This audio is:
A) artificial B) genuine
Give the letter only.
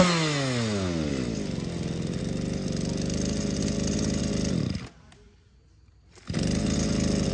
B